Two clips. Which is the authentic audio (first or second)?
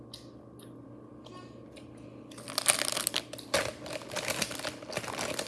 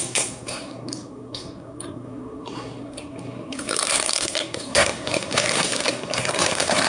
first